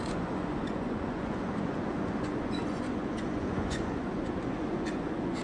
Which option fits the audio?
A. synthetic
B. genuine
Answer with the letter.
A